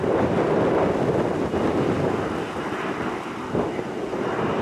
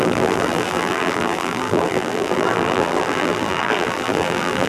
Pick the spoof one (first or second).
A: second